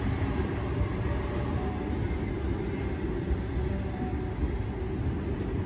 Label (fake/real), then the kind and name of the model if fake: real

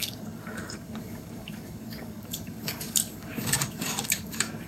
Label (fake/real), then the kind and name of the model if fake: fake, codec, DAC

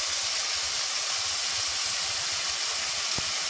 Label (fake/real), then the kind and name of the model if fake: real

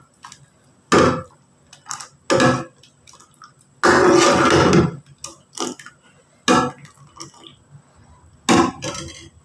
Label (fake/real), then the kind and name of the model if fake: real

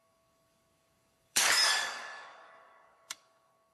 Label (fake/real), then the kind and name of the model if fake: fake, codec, DAC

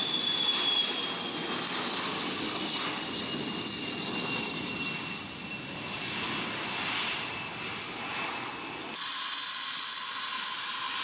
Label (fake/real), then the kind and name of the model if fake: real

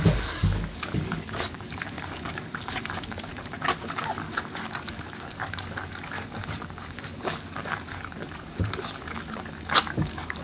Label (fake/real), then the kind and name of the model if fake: fake, codec, DAC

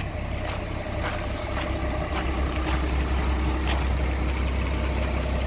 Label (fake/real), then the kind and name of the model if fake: real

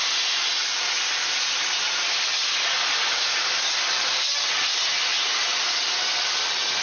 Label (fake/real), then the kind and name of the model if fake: real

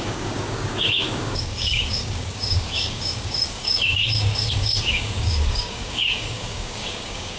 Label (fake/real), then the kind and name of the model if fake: fake, codec, DAC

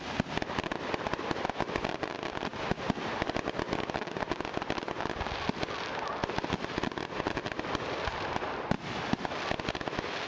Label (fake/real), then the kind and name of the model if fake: real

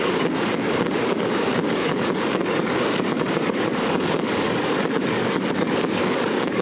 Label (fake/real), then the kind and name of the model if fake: fake, codec, DAC